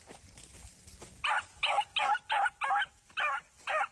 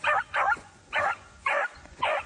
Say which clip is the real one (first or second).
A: first